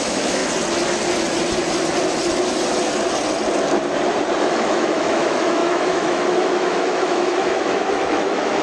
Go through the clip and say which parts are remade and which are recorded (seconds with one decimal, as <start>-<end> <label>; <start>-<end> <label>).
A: 0.0-0.4 remade; 0.4-4.4 recorded; 4.4-8.6 remade